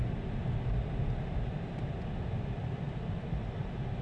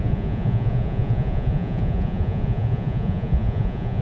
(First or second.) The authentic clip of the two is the first